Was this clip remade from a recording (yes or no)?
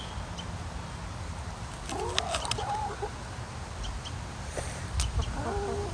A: no